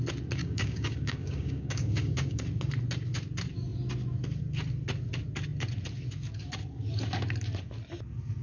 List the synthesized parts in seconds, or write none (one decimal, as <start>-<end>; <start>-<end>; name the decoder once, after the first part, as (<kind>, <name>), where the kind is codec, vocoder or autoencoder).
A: 0.4-2.4 (codec, DAC)